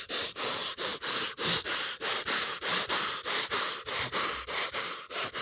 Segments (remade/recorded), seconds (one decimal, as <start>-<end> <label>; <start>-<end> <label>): 0.0-5.4 remade